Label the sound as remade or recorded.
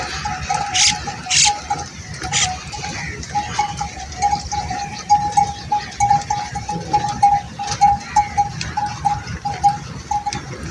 recorded